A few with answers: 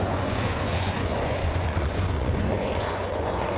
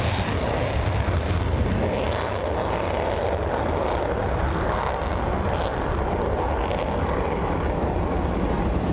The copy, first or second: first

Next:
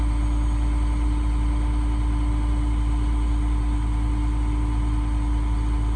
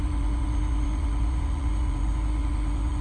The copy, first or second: second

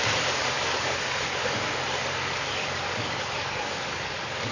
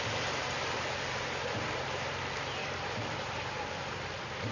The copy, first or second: first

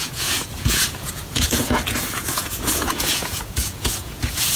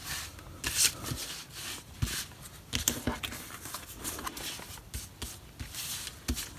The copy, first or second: first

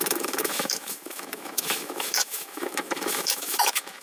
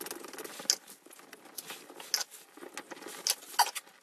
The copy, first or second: first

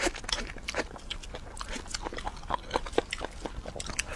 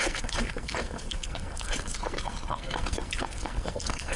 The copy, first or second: second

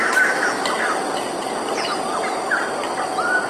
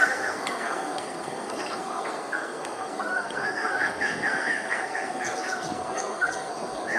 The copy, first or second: second